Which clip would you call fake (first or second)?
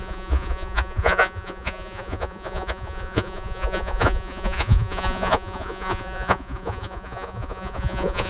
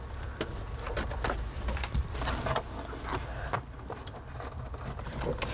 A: first